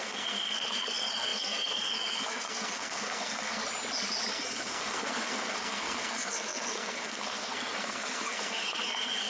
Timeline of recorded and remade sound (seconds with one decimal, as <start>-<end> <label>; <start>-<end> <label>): 0.0-3.6 remade; 3.6-4.3 recorded; 4.3-9.3 remade

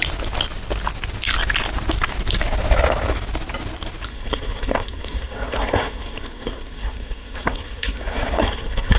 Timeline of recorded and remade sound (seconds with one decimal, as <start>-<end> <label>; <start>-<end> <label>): 0.0-4.1 recorded; 4.1-9.0 remade

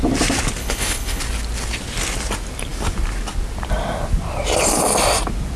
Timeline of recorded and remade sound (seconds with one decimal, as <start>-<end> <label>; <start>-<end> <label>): 0.0-0.6 recorded; 0.6-1.2 remade; 1.2-5.6 recorded

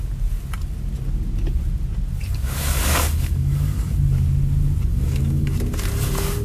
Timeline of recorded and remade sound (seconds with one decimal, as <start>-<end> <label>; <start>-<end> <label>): 0.0-2.3 recorded; 2.3-3.8 remade; 3.8-4.9 recorded; 4.9-5.5 remade; 5.5-6.4 recorded

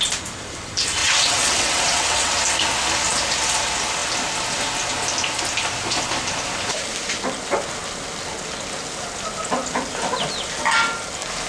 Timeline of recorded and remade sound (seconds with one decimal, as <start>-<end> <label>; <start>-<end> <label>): 0.0-1.0 recorded; 1.0-2.3 remade; 2.3-11.5 recorded

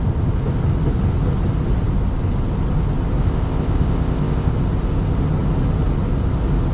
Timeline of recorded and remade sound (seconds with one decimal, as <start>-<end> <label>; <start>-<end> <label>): 0.0-3.2 recorded; 3.2-4.5 remade; 4.5-6.7 recorded

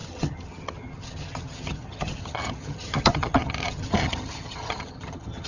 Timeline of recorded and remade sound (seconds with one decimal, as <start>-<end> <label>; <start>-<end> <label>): 0.0-5.5 remade

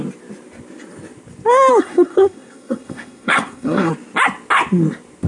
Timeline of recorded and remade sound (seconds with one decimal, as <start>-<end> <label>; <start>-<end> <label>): 0.0-1.7 recorded; 1.7-3.9 remade; 3.9-5.3 recorded